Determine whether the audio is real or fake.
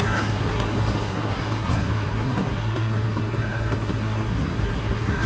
fake